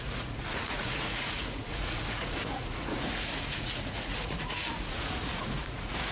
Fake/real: fake